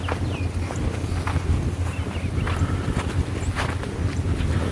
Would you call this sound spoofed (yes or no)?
no